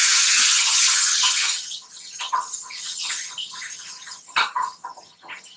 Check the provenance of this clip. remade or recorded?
remade